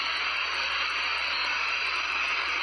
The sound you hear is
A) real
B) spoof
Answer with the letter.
A